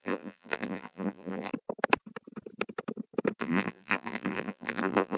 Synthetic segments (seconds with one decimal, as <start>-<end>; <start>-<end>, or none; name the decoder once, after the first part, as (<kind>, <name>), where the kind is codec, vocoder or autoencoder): 0.0-1.5 (vocoder, BigVGAN v2); 3.4-5.2